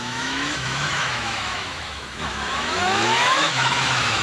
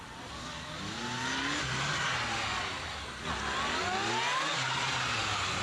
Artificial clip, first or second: first